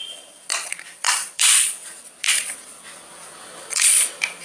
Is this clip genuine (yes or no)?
no